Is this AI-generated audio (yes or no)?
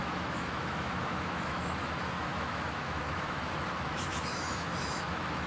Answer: yes